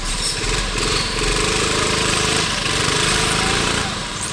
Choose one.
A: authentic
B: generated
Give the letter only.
B